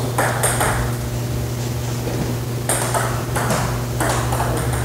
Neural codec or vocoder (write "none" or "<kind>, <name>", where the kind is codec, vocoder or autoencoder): none